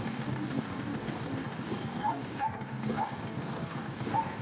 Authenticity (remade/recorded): remade